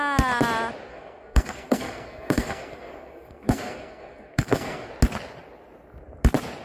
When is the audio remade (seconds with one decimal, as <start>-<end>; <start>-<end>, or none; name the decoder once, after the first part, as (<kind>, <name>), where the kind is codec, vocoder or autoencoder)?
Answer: 0.9-4.9 (codec, SNAC)